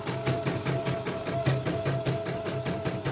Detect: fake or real real